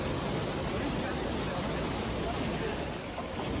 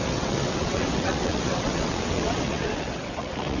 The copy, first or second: second